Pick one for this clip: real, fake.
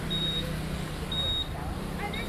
real